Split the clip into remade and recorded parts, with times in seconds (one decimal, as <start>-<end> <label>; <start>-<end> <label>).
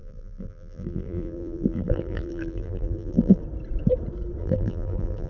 0.0-3.4 remade; 3.4-4.4 recorded; 4.4-5.3 remade